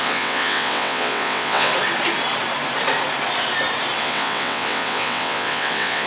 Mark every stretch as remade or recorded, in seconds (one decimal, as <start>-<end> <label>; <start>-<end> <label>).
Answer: 0.0-1.7 remade; 1.7-4.0 recorded; 4.0-6.1 remade